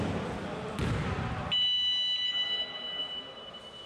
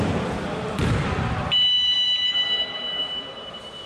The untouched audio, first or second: first